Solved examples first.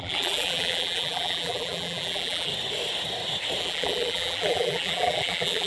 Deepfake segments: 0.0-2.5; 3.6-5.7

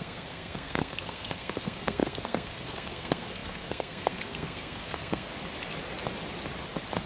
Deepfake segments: 0.0-5.3

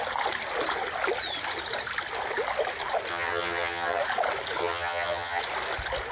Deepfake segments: 3.1-4.0; 4.6-5.4

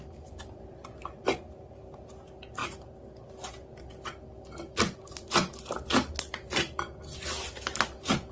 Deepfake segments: none

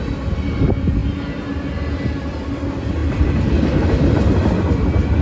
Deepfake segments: 3.0-4.5

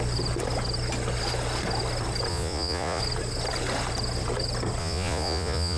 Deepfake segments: 2.3-3.0; 4.8-5.8

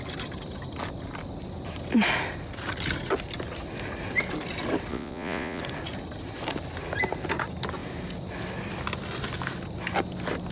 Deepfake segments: 4.9-5.6